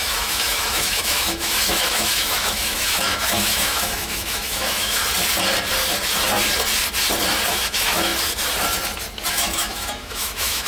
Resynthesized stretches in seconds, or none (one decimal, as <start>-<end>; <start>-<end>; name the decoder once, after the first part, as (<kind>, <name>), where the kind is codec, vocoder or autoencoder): 0.0-5.0 (autoencoder, DAC-VAE); 7.5-8.1; 9.3-10.7